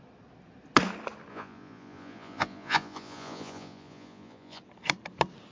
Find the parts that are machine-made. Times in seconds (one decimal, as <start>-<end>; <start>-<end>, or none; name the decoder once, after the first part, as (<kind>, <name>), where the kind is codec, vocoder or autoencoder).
1.3-4.6 (vocoder, Vocos)